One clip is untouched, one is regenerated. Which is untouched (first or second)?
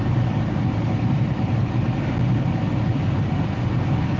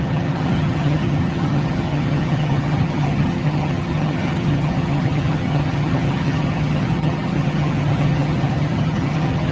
first